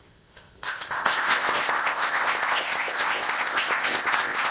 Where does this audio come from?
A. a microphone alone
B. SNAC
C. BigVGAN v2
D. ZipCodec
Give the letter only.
D